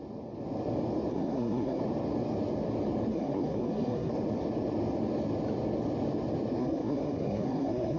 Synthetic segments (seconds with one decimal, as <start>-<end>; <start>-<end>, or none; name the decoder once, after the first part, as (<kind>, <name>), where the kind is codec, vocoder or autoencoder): 1.1-1.8 (codec, SNAC); 3.1-4.1; 6.6-8.0